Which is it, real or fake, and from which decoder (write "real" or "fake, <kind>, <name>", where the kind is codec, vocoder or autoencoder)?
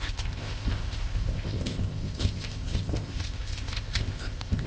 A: fake, codec, ZipCodec